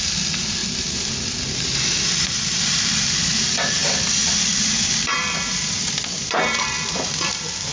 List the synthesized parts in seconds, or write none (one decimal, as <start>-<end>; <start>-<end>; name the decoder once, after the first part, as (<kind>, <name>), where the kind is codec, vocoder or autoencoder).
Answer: 0.0-0.6 (vocoder, BigVGAN v2); 1.2-7.7